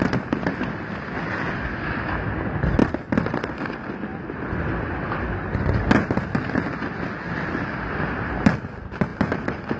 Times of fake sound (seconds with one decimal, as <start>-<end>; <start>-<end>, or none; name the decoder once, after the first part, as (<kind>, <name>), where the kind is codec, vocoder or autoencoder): none